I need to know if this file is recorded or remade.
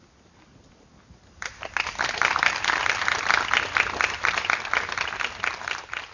recorded